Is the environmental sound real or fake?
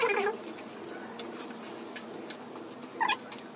real